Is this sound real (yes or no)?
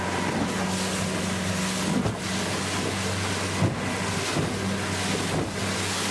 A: yes